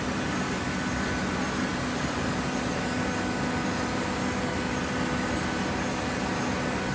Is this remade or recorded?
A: recorded